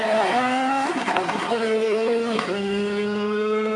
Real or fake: fake